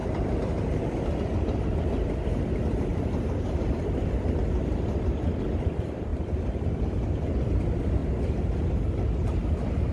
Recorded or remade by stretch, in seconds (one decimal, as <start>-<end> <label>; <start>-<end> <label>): 0.0-0.8 remade; 0.8-2.9 recorded; 2.9-3.8 remade; 3.8-8.0 recorded; 8.0-8.7 remade; 8.7-9.9 recorded